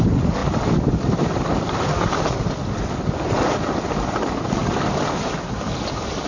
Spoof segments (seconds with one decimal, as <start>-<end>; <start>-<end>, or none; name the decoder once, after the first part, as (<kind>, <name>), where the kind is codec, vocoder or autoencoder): 0.4-4.2 (vocoder, BigVGAN v2)